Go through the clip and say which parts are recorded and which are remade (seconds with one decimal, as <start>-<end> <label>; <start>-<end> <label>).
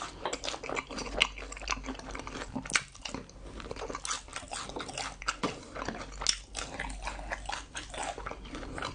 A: 0.0-8.9 recorded